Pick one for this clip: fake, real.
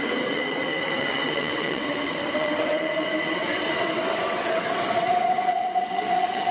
fake